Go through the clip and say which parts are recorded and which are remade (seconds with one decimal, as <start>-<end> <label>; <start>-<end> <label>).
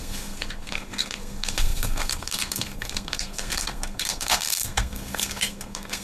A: 0.0-6.0 remade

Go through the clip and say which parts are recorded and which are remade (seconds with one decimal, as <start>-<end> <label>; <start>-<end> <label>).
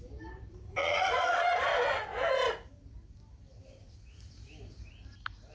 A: 0.0-0.8 recorded; 0.8-1.7 remade; 1.7-5.5 recorded